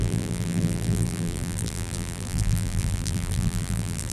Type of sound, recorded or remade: remade